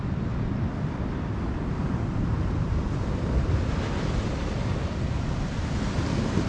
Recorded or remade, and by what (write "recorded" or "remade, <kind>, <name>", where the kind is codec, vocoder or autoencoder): recorded